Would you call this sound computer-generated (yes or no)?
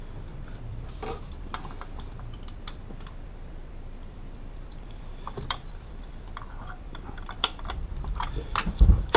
yes